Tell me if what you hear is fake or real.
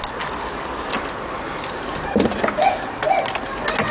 real